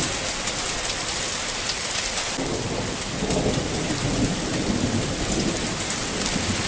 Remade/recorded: recorded